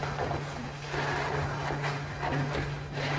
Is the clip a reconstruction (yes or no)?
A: no